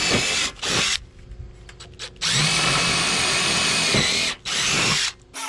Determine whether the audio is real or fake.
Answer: real